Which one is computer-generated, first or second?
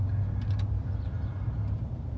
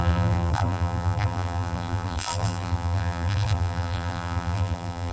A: second